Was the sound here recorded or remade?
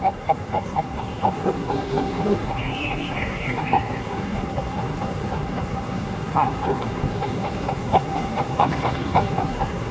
remade